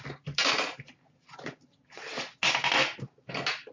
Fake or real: real